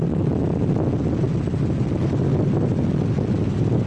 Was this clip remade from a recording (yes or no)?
no